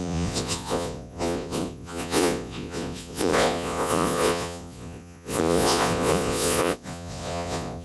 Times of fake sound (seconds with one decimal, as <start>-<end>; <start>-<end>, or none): 0.0-7.8